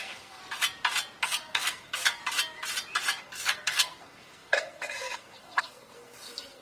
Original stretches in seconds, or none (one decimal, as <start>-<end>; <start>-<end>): 0.4-1.2; 2.2-3.2